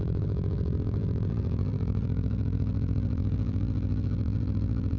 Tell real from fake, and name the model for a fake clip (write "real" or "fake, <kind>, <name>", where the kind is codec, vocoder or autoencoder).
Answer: fake, vocoder, BigVGAN v2